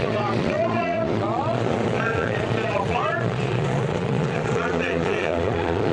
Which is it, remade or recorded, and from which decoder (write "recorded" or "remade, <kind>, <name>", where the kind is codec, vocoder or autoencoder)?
remade, vocoder, Vocos